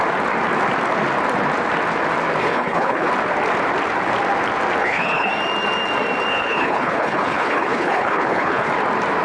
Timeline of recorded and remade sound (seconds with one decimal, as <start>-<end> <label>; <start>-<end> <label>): 0.0-2.4 recorded; 2.4-3.1 remade; 3.1-4.8 recorded; 4.8-5.3 remade; 5.3-6.3 recorded; 6.3-8.7 remade; 8.7-9.2 recorded